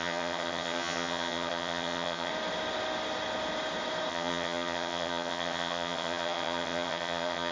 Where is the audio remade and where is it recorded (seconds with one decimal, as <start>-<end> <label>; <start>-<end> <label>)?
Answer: 0.0-2.3 remade; 2.3-4.1 recorded; 4.1-7.5 remade